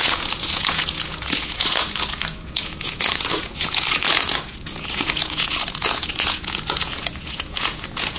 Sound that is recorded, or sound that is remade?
remade